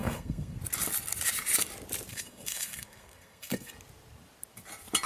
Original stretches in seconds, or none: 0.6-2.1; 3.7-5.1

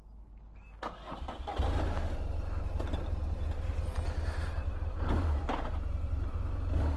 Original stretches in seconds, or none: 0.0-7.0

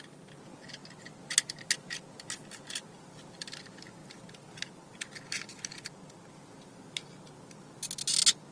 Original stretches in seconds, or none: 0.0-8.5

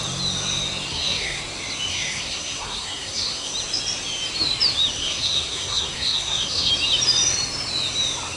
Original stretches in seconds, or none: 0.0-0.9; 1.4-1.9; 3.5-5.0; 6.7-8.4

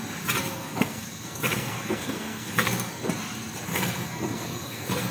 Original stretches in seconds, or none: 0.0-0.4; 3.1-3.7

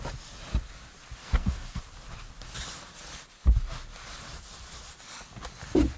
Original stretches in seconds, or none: 0.0-1.2; 1.8-6.0